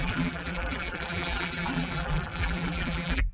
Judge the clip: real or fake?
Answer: fake